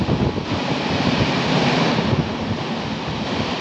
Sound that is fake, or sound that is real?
real